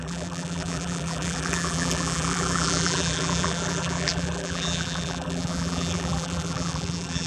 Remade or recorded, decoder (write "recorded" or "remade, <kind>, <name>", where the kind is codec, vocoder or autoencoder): remade, vocoder, BigVGAN v2